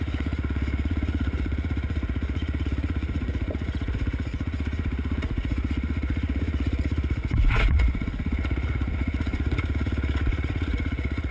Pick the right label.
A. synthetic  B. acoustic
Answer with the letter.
A